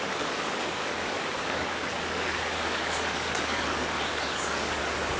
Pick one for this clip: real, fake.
fake